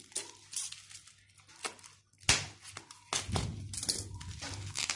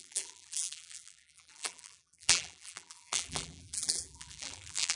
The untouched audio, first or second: first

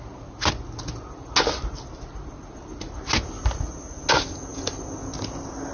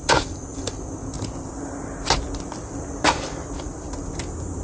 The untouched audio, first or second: first